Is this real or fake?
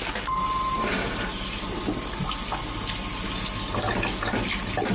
real